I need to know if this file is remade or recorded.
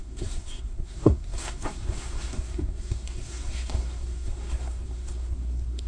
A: remade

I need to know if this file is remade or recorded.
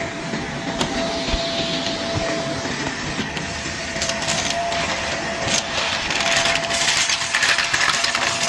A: recorded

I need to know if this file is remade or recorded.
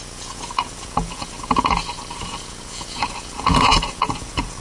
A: remade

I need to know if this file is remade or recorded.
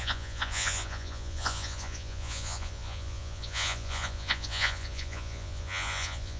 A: remade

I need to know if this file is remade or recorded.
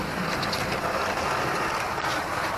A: recorded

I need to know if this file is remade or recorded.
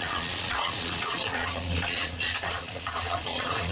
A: remade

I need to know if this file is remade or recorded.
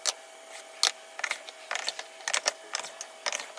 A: recorded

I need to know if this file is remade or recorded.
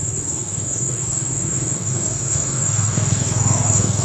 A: remade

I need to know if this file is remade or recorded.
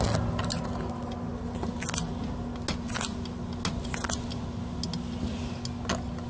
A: recorded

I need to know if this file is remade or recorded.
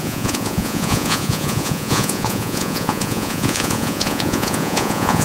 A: remade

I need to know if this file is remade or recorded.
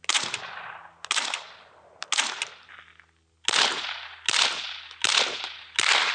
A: recorded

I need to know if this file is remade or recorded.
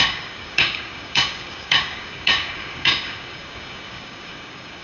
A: remade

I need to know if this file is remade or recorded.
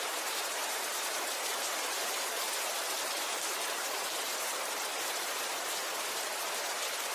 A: remade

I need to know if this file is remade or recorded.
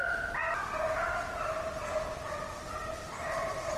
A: recorded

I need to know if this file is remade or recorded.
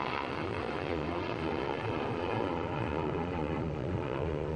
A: remade